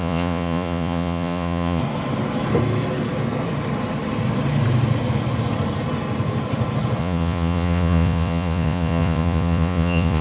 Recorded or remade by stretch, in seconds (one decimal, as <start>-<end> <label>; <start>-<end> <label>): 0.0-1.8 remade; 1.8-7.0 recorded; 7.0-10.2 remade